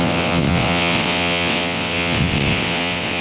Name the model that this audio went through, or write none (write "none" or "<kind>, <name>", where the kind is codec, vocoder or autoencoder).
vocoder, WaveNeXt